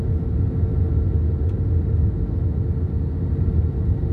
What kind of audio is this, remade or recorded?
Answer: recorded